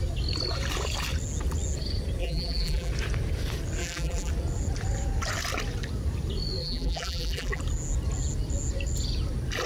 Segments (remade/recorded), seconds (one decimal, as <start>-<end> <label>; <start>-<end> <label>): 0.0-2.2 recorded; 2.2-2.9 remade; 2.9-3.8 recorded; 3.8-4.3 remade; 4.3-6.6 recorded; 6.6-7.6 remade; 7.6-9.7 recorded